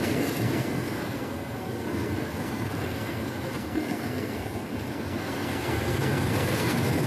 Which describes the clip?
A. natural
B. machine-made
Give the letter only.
B